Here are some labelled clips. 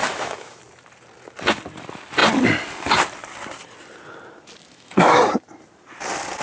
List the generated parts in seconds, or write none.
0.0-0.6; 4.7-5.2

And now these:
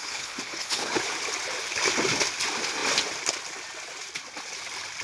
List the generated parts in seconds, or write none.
0.0-1.0